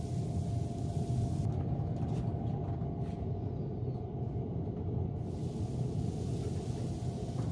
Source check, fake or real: real